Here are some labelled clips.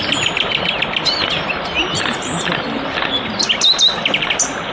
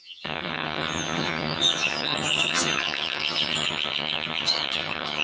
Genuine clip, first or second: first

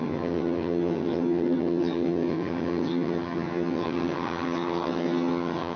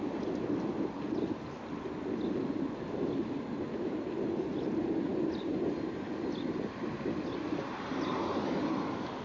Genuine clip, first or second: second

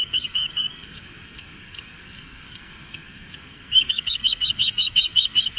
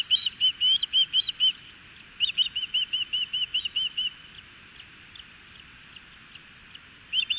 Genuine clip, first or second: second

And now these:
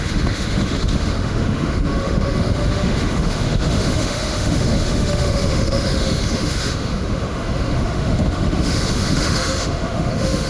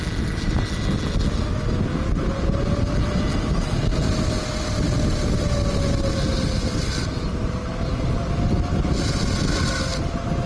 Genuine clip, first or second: second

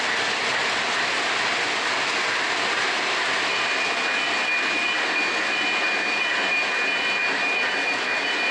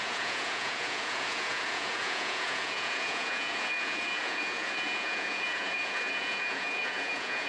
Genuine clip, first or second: first